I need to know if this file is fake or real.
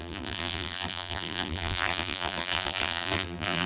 fake